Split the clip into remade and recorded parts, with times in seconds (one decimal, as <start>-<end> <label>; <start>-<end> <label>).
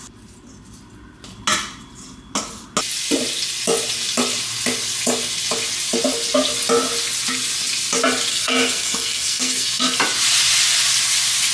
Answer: 0.0-8.3 recorded; 8.3-10.0 remade; 10.0-11.5 recorded